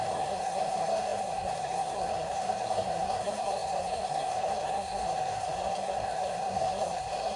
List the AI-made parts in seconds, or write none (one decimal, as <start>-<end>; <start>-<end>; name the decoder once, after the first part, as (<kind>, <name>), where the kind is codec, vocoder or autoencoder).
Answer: 0.0-7.4 (codec, SNAC)